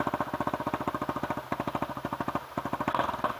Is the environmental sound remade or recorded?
recorded